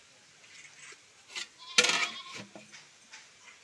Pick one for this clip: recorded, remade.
recorded